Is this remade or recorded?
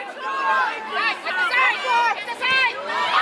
recorded